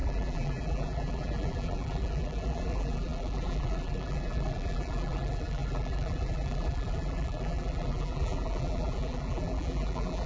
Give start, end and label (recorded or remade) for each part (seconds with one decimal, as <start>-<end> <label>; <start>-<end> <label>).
0.0-10.3 remade